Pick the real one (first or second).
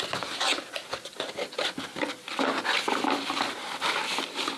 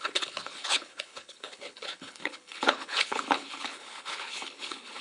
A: first